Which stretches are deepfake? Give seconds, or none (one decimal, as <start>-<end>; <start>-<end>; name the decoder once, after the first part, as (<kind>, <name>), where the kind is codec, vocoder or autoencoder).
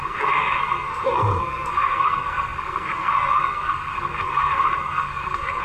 0.0-5.6 (codec, SNAC)